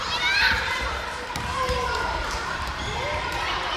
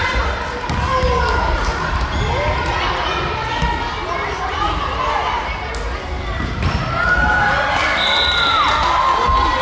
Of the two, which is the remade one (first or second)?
first